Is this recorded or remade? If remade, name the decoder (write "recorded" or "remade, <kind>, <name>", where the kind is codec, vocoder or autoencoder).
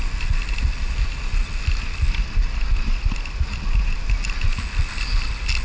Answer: recorded